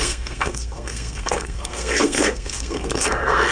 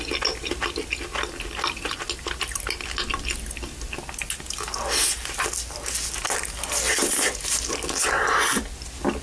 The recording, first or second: second